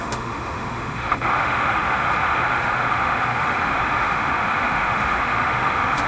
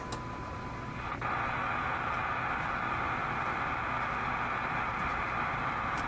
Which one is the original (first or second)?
second